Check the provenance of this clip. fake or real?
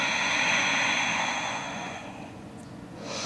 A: fake